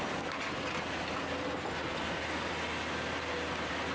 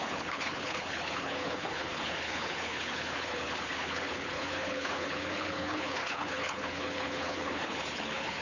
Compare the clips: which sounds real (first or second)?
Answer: first